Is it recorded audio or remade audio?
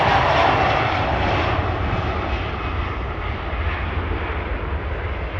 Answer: recorded